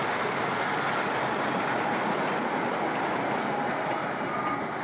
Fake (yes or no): no